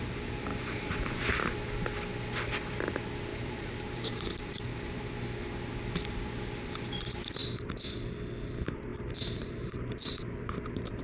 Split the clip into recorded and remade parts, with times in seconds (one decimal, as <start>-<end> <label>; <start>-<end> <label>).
0.0-0.5 recorded; 0.5-1.2 remade; 1.2-3.3 recorded; 3.3-5.1 remade; 5.1-7.4 recorded; 7.4-8.0 remade; 8.0-8.9 recorded; 8.9-11.0 remade